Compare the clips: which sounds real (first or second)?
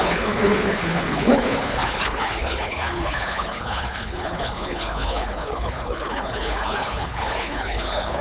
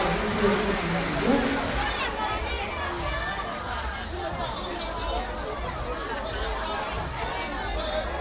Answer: second